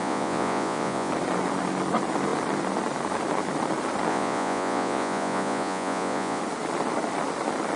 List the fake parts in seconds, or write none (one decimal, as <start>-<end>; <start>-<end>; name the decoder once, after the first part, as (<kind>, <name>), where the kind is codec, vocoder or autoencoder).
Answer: 0.0-1.1 (vocoder, Vocos); 4.1-6.4